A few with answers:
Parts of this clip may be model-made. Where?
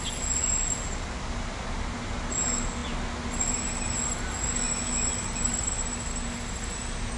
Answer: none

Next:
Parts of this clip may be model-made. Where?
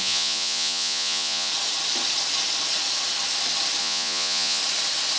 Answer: 0.0-1.5 (vocoder, Vocos); 3.8-4.6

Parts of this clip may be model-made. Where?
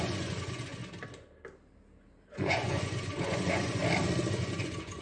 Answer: 0.0-0.8 (vocoder, Vocos); 2.3-3.8; 4.3-5.0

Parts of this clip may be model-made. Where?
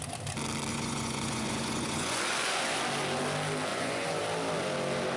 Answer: 0.7-2.8 (vocoder, Vocos); 3.7-4.2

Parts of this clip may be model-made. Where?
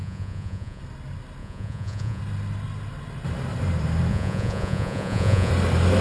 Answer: 0.0-0.8 (vocoder, Vocos); 1.4-2.2; 4.1-5.5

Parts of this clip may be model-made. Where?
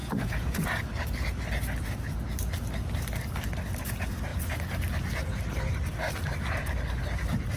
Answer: 0.0-0.8 (vocoder, Vocos)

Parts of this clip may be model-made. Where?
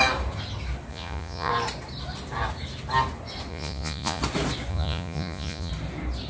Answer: 0.9-1.5 (vocoder, Vocos); 3.5-4.2; 4.7-5.7